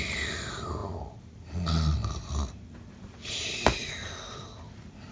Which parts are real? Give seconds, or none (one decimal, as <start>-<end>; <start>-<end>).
0.0-5.1